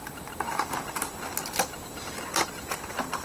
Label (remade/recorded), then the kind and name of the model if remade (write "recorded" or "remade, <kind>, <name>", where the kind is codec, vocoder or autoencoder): recorded